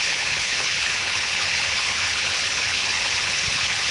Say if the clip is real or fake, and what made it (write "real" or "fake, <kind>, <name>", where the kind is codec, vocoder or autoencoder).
fake, codec, HILCodec